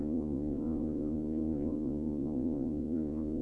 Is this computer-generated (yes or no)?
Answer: yes